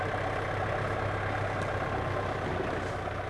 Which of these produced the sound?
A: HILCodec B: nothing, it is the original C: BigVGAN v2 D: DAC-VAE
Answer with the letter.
B